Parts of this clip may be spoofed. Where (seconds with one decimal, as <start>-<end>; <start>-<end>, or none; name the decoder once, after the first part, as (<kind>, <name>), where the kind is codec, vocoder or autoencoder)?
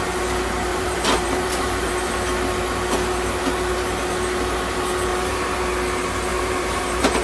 0.7-1.9 (vocoder, BigVGAN v2); 5.1-5.6; 6.3-7.2